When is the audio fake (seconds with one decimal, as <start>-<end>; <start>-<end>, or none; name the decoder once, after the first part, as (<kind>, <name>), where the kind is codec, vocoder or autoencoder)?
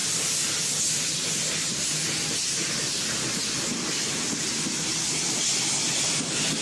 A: none